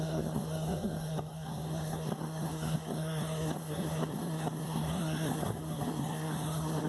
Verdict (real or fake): fake